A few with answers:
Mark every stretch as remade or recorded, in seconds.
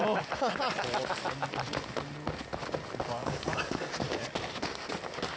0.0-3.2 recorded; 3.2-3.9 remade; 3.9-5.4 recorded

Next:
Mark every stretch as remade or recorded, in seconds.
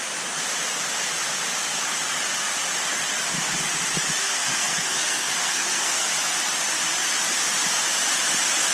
0.0-4.2 recorded; 4.2-6.1 remade; 6.1-8.7 recorded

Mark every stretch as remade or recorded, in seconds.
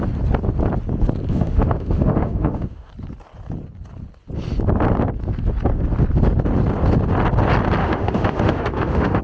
0.0-1.3 recorded; 1.3-2.9 remade; 2.9-7.8 recorded; 7.8-9.2 remade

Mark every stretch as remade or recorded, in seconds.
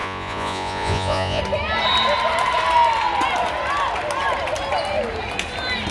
0.0-1.4 remade; 1.4-5.9 recorded